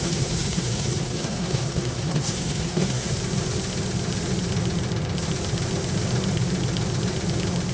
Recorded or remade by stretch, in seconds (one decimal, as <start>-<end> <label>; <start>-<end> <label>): 0.0-3.2 remade; 3.2-7.7 recorded